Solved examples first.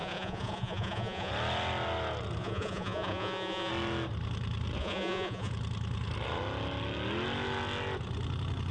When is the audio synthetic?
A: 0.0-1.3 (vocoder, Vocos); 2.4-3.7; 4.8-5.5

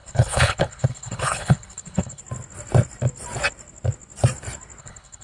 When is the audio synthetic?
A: 0.0-2.2 (codec, HILCodec); 4.8-5.2

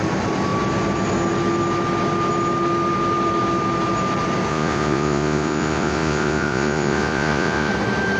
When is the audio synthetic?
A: 4.5-7.7 (vocoder, Vocos)

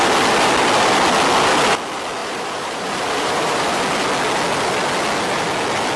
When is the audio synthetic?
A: 2.2-3.8 (vocoder, BigVGAN v2)

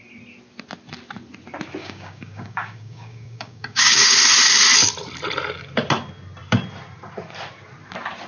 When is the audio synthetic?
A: 1.8-4.2 (codec, DAC)

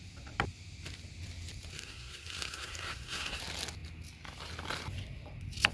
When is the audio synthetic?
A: 1.7-3.4 (codec, SNAC)

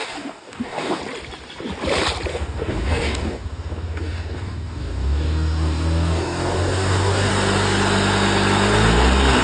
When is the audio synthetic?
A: 0.0-1.0 (codec, DAC); 2.3-7.3